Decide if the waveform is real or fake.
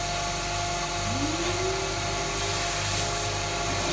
real